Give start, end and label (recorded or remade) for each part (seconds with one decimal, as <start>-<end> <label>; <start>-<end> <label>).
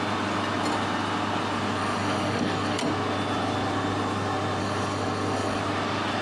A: 0.0-1.8 recorded; 1.8-2.8 remade; 2.8-4.6 recorded; 4.6-5.6 remade; 5.6-6.2 recorded